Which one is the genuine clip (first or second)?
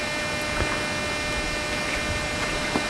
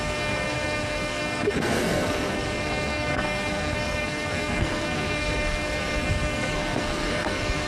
first